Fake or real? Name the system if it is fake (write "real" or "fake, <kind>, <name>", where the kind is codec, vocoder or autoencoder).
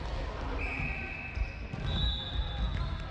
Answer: real